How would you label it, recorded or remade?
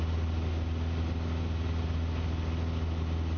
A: recorded